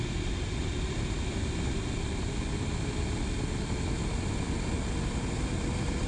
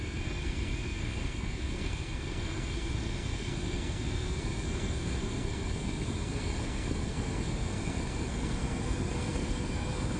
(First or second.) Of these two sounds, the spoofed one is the second